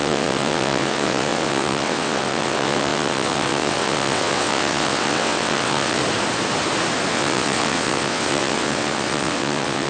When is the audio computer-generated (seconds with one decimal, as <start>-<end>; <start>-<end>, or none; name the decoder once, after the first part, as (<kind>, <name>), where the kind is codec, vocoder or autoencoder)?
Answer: 0.0-6.0 (vocoder, WaveNeXt); 7.1-9.9